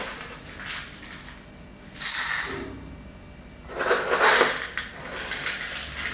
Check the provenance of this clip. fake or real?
real